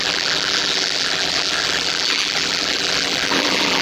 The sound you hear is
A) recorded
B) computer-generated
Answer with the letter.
B